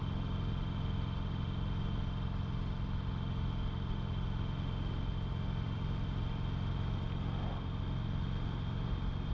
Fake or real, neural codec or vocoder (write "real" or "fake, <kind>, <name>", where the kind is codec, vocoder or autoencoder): real